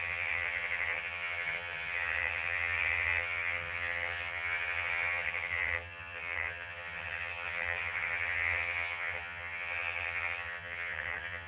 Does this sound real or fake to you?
fake